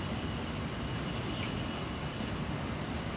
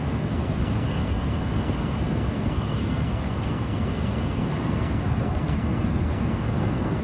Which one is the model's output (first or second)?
second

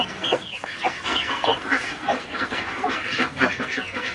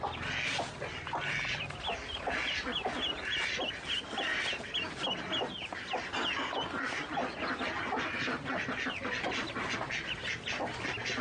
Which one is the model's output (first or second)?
first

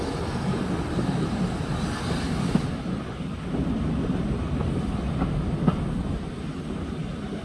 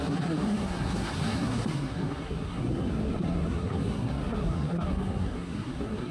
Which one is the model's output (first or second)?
second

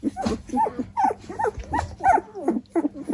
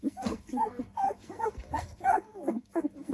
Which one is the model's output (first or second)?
second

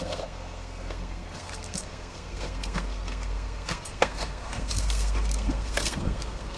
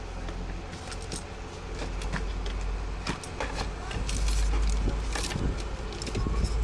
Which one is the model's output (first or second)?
first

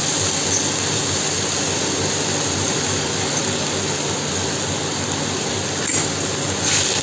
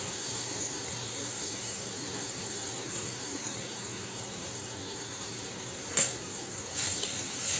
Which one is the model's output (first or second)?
second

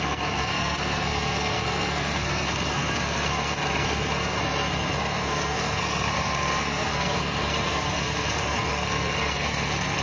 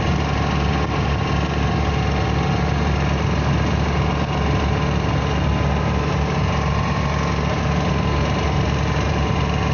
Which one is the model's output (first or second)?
first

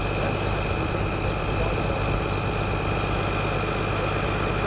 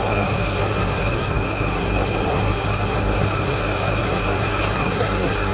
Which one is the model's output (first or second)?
second